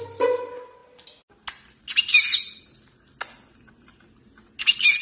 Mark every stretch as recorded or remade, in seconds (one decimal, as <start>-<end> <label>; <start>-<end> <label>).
0.0-5.0 recorded